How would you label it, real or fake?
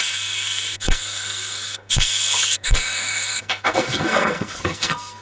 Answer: fake